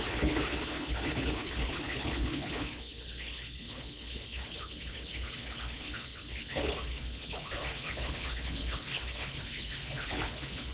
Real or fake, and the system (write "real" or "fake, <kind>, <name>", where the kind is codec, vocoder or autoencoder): fake, codec, HILCodec